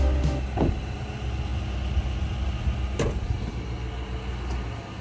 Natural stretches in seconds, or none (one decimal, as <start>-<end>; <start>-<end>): 0.0-5.0